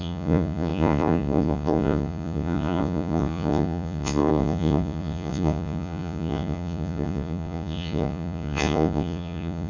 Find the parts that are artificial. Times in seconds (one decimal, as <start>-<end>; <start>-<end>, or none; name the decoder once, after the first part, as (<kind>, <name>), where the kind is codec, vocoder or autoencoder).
0.0-9.7 (vocoder, Vocos)